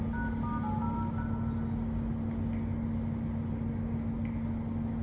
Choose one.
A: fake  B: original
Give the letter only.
B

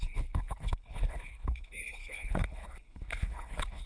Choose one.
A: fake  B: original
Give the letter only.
A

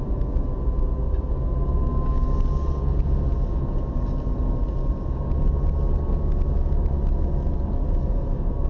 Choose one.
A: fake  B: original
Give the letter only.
B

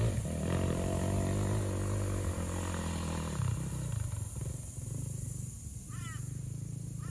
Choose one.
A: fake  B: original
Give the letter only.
B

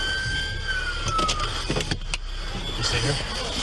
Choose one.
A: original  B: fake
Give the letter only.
A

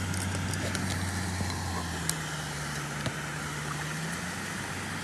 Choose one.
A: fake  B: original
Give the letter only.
B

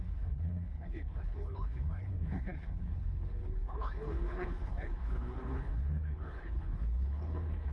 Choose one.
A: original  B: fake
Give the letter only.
B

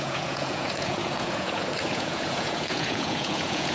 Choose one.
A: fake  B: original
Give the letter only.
A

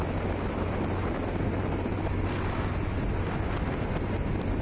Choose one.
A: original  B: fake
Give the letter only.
A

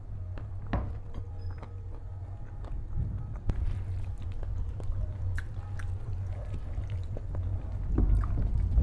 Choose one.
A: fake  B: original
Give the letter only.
B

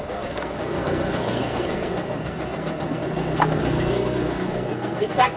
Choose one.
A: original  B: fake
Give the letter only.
B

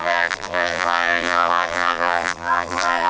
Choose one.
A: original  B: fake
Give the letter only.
B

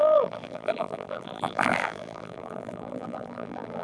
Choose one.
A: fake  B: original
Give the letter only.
A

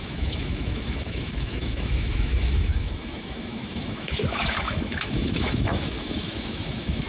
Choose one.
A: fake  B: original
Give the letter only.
A